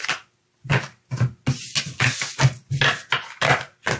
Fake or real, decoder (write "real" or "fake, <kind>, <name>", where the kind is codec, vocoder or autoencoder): real